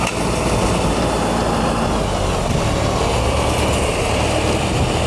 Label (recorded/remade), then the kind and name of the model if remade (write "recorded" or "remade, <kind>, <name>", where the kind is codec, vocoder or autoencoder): recorded